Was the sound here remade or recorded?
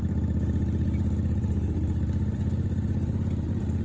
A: remade